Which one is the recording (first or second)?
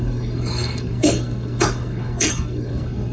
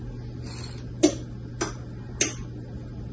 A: second